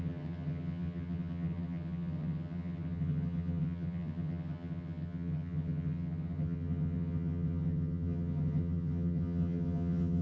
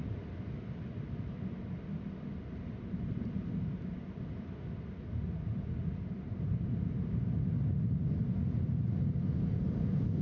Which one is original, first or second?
second